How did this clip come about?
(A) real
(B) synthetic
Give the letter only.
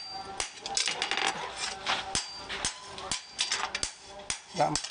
A